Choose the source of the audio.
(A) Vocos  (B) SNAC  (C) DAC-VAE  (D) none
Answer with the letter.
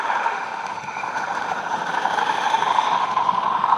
C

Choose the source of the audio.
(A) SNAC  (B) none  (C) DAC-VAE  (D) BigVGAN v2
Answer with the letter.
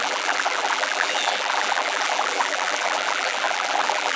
D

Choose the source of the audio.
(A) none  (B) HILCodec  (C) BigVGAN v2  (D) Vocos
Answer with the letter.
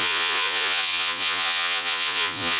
D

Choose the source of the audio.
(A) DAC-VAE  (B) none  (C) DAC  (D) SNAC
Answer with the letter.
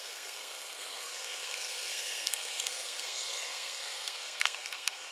D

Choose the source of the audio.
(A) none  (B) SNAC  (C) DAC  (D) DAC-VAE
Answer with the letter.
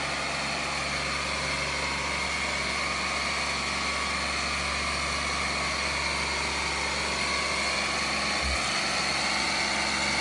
A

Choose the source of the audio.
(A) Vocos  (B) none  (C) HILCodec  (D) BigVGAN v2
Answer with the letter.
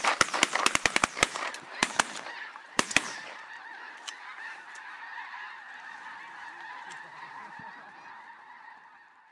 D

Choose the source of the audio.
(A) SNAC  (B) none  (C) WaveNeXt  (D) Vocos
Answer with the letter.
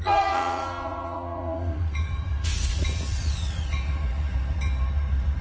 D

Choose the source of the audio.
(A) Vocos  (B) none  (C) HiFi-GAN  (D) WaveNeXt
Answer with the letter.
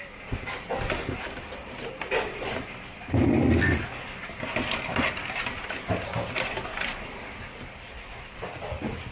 B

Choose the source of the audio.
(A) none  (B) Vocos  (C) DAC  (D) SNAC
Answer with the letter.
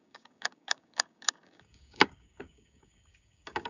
C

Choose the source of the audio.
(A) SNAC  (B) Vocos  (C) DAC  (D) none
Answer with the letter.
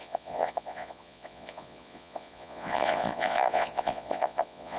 B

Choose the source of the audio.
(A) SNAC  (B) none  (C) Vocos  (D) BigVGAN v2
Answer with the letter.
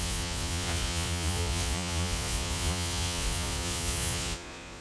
C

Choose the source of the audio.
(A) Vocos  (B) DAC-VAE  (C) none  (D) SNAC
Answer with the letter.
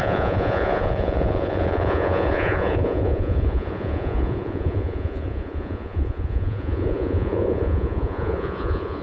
A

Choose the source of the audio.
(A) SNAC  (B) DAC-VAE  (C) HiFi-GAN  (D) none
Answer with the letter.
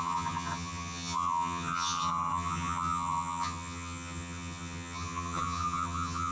C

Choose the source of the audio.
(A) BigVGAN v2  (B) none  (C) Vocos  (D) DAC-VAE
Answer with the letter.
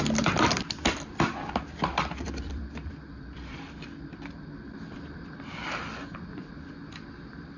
A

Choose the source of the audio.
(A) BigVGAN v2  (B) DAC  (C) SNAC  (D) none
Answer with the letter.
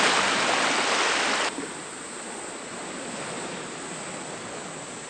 D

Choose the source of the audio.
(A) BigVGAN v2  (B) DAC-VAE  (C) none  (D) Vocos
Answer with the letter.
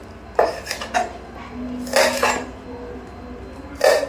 C